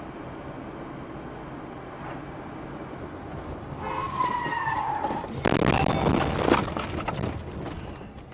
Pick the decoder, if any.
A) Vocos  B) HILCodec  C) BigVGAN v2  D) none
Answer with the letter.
D